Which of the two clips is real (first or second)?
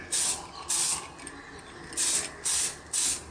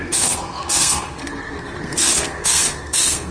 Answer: first